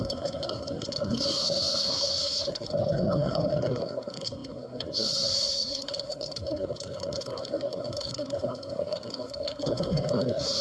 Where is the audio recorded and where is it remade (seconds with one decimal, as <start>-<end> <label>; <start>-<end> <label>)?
0.0-10.6 remade